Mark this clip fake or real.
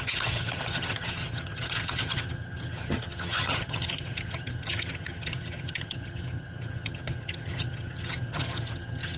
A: fake